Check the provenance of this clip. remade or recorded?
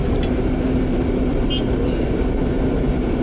recorded